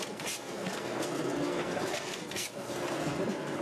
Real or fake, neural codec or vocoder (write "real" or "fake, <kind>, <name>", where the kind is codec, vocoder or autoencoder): fake, codec, SNAC